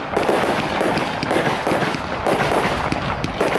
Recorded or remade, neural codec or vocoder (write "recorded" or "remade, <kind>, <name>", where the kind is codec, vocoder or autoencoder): recorded